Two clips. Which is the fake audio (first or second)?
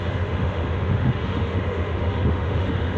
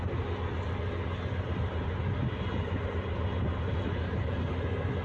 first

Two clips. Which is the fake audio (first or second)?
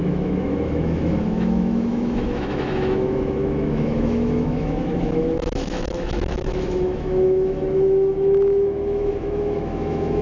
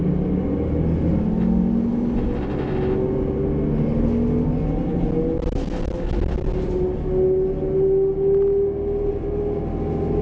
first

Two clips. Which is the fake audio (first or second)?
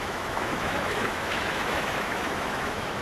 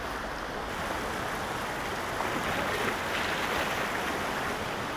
first